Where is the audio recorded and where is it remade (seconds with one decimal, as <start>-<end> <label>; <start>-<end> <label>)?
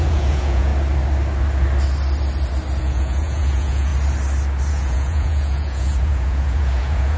0.0-0.7 remade; 0.7-2.8 recorded; 2.8-3.9 remade; 3.9-4.7 recorded; 4.7-7.2 remade